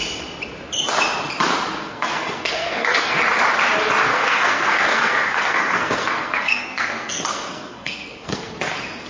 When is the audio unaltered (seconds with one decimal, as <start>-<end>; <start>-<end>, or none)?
0.0-1.8; 3.2-4.1; 8.5-9.1

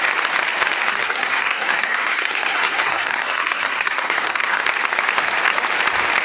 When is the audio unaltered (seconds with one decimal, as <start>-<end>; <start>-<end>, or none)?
0.0-0.9; 4.6-6.2

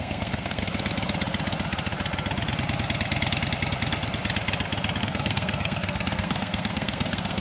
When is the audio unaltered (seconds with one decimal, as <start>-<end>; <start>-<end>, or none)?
0.6-5.0

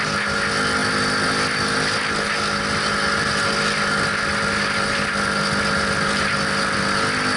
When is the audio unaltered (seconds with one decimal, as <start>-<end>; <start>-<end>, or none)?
0.0-7.4

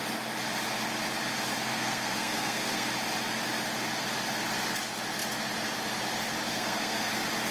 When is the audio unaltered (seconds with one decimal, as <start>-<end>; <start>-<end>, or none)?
0.0-1.7; 2.9-6.5; 7.1-7.5